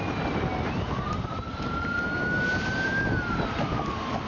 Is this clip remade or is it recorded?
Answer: recorded